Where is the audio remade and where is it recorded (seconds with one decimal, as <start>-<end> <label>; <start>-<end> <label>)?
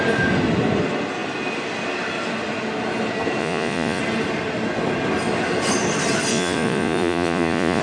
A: 0.0-3.4 recorded; 3.4-4.0 remade; 4.0-6.3 recorded; 6.3-7.8 remade